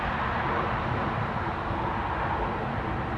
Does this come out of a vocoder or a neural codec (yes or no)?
no